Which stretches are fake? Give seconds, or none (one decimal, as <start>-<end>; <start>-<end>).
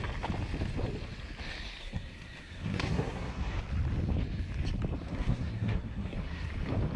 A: 1.8-3.6; 5.1-6.5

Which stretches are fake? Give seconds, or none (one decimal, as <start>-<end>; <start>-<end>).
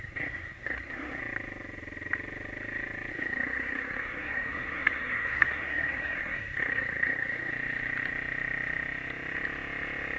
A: 0.0-1.2; 3.1-7.5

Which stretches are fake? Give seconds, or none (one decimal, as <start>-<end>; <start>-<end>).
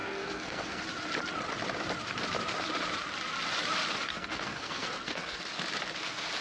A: 0.0-0.8; 4.1-5.4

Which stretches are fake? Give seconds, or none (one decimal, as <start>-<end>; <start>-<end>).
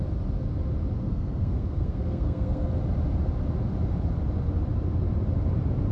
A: 1.0-2.7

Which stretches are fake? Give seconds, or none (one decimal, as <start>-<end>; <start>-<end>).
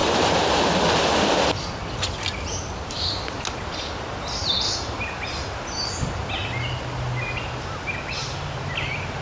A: none